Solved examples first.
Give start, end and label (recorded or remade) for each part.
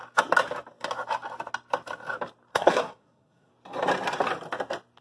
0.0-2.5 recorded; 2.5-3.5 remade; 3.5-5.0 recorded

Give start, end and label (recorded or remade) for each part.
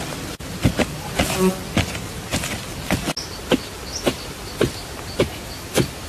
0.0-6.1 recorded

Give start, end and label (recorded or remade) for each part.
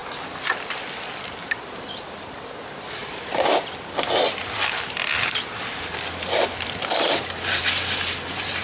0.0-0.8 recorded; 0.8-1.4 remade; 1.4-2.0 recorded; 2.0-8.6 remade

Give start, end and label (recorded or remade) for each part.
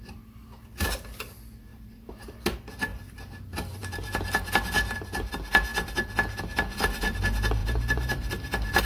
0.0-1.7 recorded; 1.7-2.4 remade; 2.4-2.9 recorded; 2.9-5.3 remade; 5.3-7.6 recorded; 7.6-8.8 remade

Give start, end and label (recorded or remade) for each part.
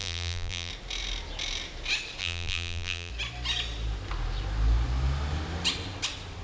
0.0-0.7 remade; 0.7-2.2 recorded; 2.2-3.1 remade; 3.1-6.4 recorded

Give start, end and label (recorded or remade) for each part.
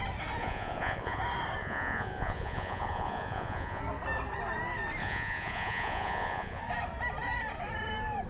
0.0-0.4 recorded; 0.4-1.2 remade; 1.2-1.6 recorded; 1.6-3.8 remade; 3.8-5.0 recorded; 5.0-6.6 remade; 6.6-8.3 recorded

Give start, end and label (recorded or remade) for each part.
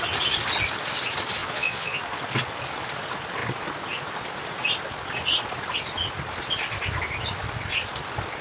0.0-1.4 recorded; 1.4-2.0 remade; 2.0-8.4 recorded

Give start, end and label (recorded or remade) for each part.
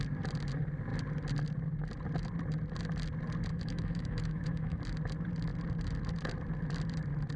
0.0-3.5 recorded; 3.5-4.8 remade; 4.8-7.4 recorded